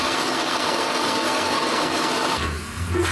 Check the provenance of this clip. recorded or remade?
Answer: remade